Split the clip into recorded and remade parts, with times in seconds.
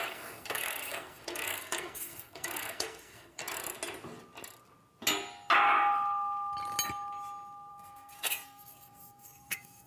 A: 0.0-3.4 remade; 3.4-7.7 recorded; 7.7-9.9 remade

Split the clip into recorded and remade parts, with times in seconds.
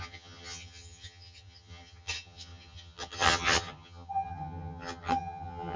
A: 0.0-5.8 remade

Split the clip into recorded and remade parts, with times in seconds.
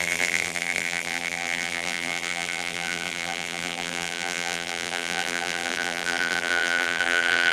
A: 0.0-7.5 remade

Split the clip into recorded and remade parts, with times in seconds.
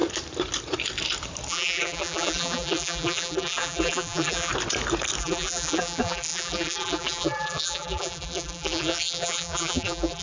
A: 0.0-1.5 recorded; 1.5-4.5 remade; 4.5-5.2 recorded; 5.2-10.2 remade